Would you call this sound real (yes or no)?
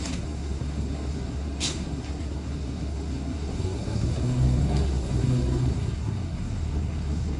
no